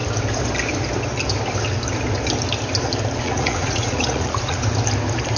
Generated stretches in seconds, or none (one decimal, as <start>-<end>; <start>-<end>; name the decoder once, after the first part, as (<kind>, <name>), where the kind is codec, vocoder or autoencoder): 3.2-4.6 (vocoder, Vocos)